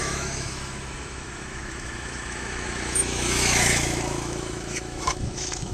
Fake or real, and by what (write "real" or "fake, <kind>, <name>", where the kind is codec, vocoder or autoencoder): fake, autoencoder, DAC-VAE